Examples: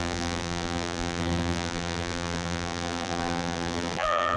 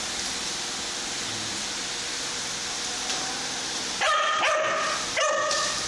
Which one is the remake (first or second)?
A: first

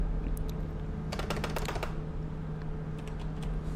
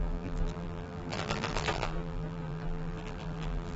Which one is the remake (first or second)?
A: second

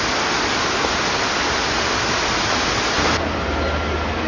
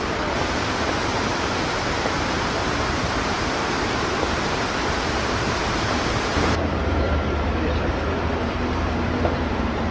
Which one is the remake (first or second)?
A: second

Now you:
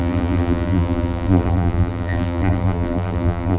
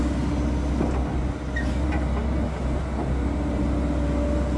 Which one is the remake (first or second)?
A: first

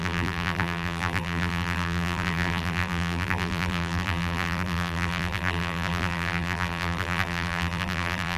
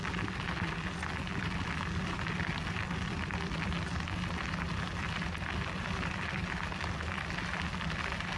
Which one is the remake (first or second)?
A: first